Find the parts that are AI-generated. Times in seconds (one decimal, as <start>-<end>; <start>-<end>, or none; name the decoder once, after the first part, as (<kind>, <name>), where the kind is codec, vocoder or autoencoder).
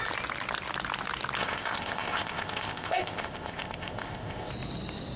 1.4-4.5 (codec, ZipCodec)